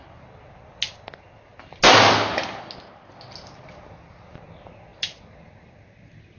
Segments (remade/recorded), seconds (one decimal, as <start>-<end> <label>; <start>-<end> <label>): 0.0-6.4 recorded